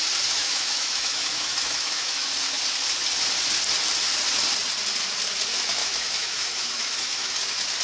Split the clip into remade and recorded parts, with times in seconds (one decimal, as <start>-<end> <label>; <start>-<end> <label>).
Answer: 0.0-0.4 recorded; 0.4-2.3 remade; 2.3-5.8 recorded; 5.8-7.3 remade; 7.3-7.8 recorded